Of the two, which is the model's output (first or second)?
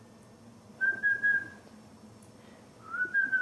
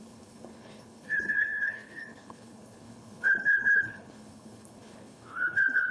second